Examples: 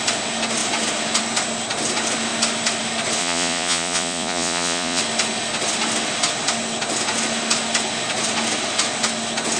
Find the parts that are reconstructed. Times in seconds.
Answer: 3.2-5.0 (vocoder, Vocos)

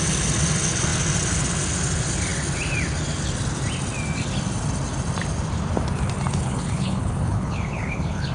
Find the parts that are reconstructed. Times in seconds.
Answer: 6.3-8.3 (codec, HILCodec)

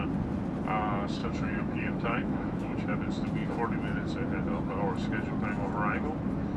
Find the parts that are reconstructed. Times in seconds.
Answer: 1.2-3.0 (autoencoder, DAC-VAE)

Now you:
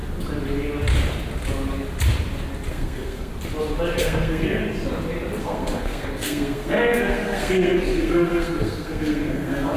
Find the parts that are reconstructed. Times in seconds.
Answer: 2.7-3.3 (codec, SNAC); 4.0-4.6; 5.4-9.8

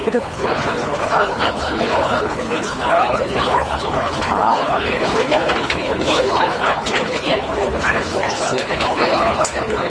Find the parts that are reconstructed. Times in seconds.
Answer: 0.0-9.9 (codec, HILCodec)

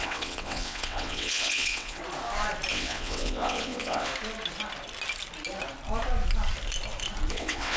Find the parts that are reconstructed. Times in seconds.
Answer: 0.0-2.0 (vocoder, WaveNeXt); 2.7-4.1; 7.3-7.8

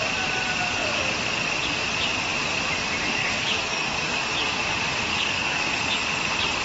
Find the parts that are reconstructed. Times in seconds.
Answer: 3.2-4.3 (codec, DAC); 5.1-5.7

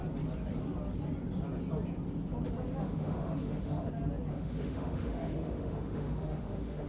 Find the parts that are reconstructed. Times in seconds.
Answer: 2.8-3.9 (autoencoder, DAC-VAE); 4.3-6.9